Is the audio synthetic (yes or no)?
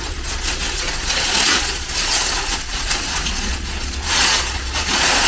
yes